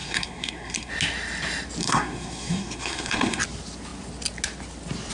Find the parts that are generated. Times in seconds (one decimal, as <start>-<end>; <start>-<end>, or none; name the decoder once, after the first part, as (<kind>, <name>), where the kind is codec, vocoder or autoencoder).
0.0-0.9 (codec, SNAC); 1.8-3.4